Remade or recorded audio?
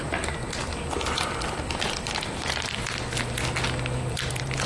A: remade